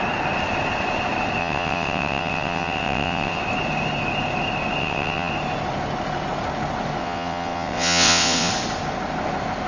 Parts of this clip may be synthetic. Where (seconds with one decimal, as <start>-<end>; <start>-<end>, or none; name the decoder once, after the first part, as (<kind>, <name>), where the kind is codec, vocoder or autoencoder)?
1.4-3.4 (vocoder, WaveNeXt); 4.8-5.3; 7.0-8.5